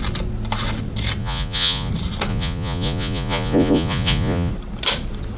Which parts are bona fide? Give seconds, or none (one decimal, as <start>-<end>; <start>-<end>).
0.0-1.2; 1.9-2.3; 4.5-5.4